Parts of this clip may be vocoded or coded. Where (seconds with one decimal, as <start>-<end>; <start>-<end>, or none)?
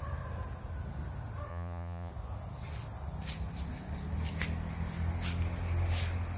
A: 1.5-2.1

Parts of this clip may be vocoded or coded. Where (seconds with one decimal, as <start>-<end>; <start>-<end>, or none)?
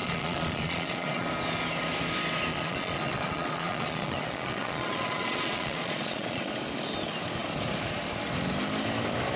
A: 0.0-1.3; 2.5-6.5